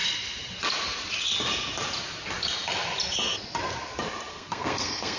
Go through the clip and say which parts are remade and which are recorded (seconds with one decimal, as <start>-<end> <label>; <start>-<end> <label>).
0.0-4.3 recorded; 4.3-5.2 remade